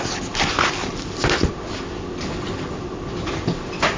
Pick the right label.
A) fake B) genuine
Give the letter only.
B